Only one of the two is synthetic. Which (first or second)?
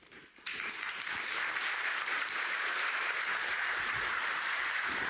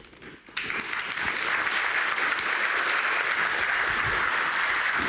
first